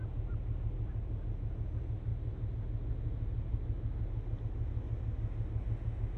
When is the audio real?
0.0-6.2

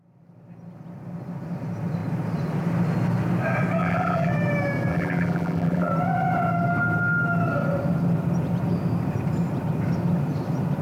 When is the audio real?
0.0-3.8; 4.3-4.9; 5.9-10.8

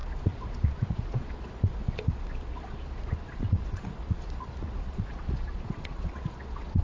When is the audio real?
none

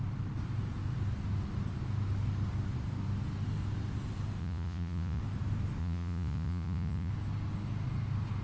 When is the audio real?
0.0-4.4; 5.2-5.8; 7.1-8.4

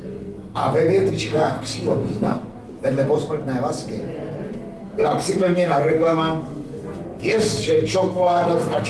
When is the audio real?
0.6-1.1; 2.6-4.5

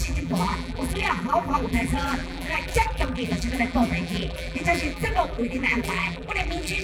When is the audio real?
none